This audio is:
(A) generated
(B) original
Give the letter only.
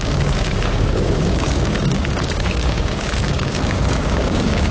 A